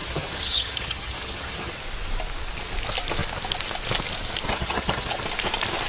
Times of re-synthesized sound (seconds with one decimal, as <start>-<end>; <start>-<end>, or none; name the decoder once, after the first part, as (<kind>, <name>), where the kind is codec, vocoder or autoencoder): 0.0-1.7 (vocoder, HiFi-GAN); 4.5-5.2